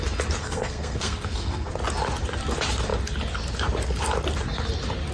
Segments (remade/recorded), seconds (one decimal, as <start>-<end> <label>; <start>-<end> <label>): 0.0-0.4 recorded; 0.4-1.7 remade; 1.7-5.1 recorded